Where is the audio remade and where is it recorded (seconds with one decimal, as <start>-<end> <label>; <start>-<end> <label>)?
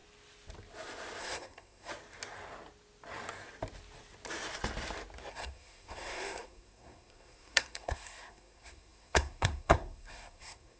0.0-1.2 recorded; 1.2-1.9 remade; 1.9-5.3 recorded; 5.3-10.8 remade